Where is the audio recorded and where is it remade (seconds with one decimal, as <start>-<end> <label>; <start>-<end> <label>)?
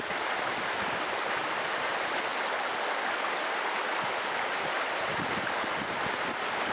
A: 0.0-6.7 recorded